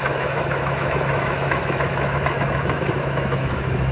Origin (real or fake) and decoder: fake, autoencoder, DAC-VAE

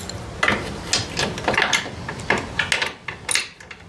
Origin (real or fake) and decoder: real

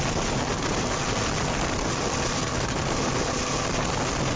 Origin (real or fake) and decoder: real